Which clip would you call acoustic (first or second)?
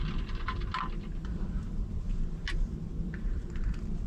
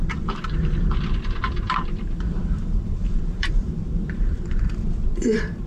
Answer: first